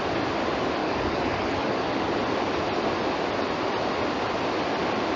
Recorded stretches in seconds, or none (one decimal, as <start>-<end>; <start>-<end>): 0.0-0.8; 2.1-5.2